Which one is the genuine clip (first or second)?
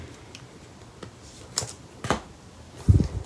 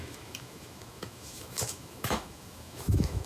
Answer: first